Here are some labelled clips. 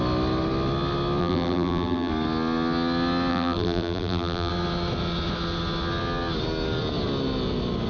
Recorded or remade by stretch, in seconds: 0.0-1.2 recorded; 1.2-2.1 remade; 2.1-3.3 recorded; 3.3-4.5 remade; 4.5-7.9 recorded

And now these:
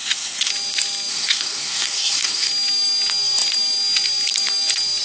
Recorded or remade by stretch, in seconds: 0.0-0.5 remade; 0.5-1.1 recorded; 1.1-2.5 remade; 2.5-5.0 recorded

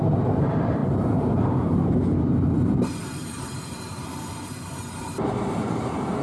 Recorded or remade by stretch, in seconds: 0.0-6.2 remade

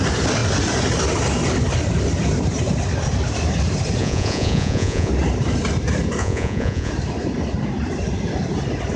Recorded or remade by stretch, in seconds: 0.0-4.0 recorded; 4.0-5.1 remade; 5.1-6.2 recorded; 6.2-6.9 remade; 6.9-9.0 recorded